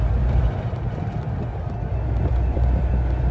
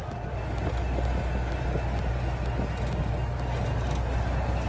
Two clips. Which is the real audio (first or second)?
second